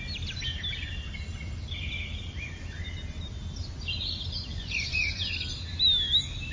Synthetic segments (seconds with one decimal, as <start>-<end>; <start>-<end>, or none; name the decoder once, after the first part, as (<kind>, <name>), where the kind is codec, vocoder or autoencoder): 4.5-5.3 (vocoder, Vocos)